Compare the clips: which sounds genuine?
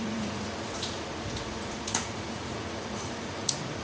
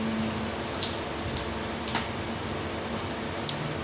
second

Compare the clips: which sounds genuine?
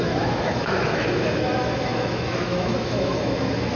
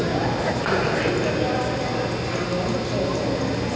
second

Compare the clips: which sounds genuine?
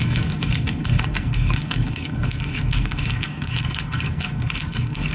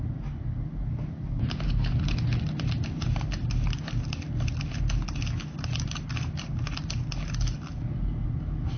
second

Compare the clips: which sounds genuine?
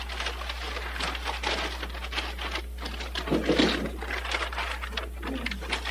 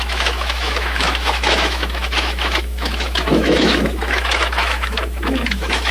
first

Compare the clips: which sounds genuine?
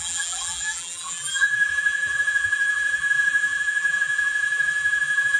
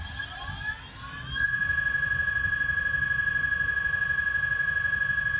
second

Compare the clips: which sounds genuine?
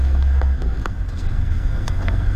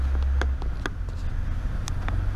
second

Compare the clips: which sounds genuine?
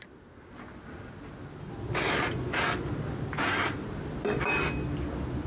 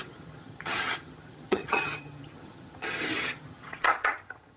first